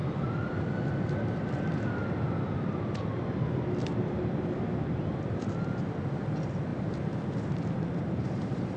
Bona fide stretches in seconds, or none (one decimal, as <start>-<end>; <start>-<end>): 0.0-5.0

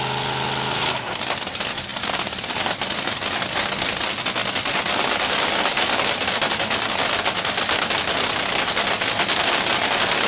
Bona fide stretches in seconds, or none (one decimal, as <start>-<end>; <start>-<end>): 0.0-1.9; 2.6-10.3

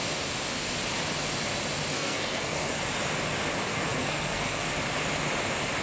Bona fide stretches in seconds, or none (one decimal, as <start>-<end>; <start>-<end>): 0.0-1.9; 2.8-3.7; 4.7-5.8

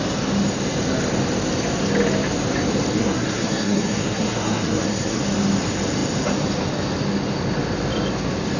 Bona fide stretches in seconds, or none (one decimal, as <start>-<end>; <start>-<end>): 0.0-2.9; 5.2-8.6

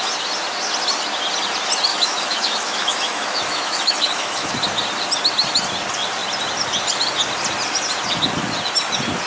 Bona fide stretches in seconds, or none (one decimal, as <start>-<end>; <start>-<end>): 0.0-1.9; 4.5-9.3

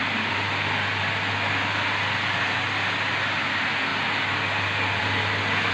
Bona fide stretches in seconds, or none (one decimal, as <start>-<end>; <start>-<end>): 0.0-5.7

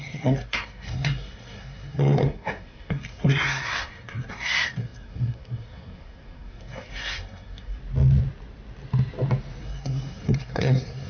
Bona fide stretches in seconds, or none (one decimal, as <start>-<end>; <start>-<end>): 7.8-9.6

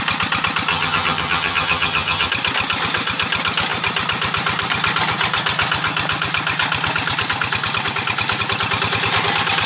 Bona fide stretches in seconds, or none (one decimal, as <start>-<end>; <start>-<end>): 0.0-0.7; 2.3-9.7